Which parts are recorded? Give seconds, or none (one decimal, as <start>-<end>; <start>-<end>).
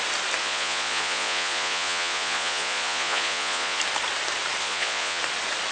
0.0-0.4; 3.8-4.6; 5.2-5.7